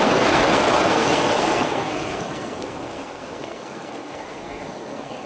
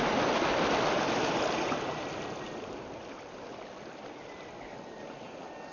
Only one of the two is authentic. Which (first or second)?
second